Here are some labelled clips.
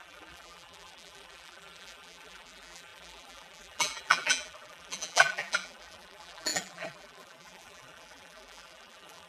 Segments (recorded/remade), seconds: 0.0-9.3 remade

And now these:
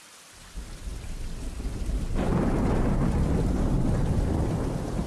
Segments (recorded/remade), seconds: 0.0-5.1 recorded